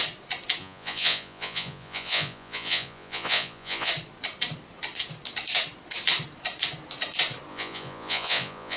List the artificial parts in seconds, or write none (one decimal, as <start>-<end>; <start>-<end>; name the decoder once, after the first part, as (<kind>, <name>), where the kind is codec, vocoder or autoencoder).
0.6-3.9 (vocoder, Vocos); 7.5-8.8